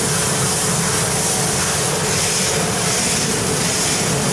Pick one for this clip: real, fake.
real